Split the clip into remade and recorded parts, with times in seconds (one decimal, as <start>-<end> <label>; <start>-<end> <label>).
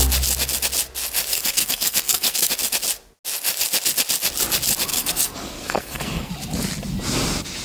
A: 0.0-1.3 recorded; 1.3-2.5 remade; 2.5-4.9 recorded; 4.9-6.3 remade; 6.3-7.6 recorded